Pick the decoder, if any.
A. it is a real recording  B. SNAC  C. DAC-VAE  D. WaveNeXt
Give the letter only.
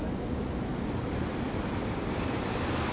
A